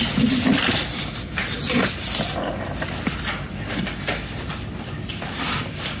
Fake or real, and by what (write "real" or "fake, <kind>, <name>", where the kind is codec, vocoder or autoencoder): real